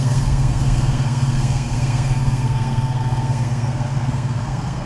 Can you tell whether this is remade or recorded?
remade